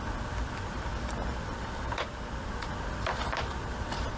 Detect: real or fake real